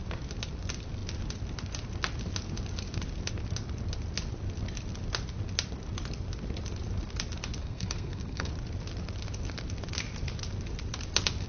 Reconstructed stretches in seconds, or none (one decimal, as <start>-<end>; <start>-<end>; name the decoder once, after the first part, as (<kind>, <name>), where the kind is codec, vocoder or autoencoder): 7.6-8.5 (codec, SNAC)

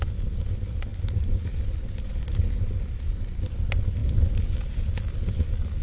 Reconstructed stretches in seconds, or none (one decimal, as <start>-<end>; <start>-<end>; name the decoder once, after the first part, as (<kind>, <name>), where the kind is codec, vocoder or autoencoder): none

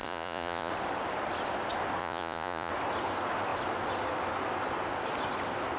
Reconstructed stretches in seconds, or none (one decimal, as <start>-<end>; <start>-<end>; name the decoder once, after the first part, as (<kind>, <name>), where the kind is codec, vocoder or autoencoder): 0.0-0.7 (vocoder, Vocos); 2.0-2.7

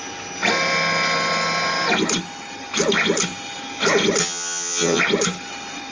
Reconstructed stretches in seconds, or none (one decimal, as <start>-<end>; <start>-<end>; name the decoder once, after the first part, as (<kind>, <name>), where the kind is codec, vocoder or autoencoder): 4.2-5.0 (vocoder, HiFi-GAN)

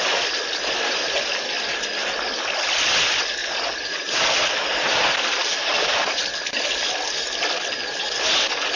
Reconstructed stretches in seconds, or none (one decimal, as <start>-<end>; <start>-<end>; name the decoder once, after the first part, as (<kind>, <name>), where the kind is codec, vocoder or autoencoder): 3.4-5.1 (vocoder, BigVGAN v2); 5.7-6.2

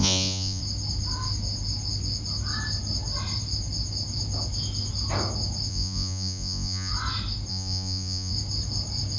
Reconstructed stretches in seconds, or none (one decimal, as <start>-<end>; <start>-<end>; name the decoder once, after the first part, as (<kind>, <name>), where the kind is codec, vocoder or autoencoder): 0.0-0.6 (vocoder, Vocos); 5.7-6.9; 7.5-8.3

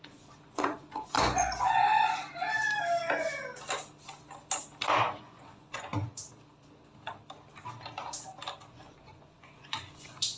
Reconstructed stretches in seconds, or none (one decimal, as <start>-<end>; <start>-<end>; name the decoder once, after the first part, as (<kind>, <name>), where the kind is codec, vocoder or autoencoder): 0.0-1.9 (vocoder, Vocos); 5.1-5.9; 8.7-10.4

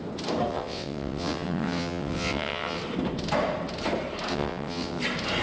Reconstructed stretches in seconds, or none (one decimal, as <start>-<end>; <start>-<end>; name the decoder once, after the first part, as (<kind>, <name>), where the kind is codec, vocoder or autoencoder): 0.5-2.8 (vocoder, WaveNeXt); 4.3-5.0